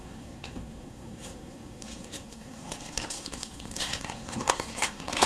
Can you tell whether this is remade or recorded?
remade